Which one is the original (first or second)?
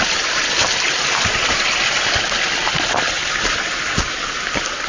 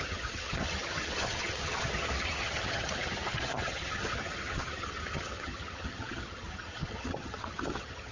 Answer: first